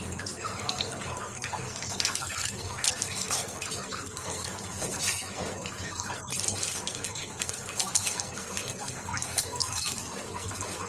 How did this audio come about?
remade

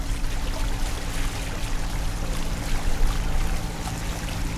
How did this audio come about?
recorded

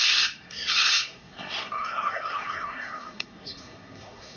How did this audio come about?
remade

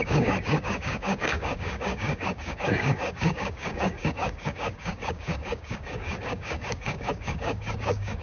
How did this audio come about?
remade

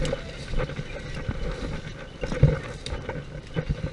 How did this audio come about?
recorded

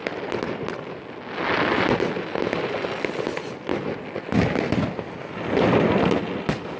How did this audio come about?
recorded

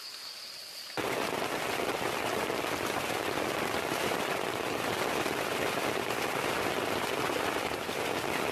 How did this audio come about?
recorded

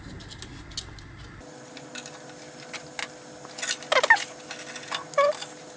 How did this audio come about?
recorded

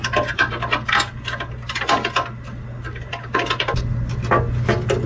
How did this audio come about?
recorded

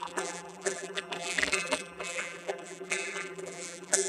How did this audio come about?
remade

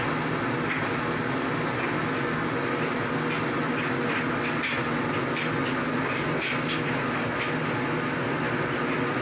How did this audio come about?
recorded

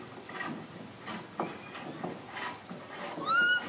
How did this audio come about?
recorded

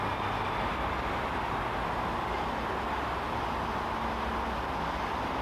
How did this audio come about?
recorded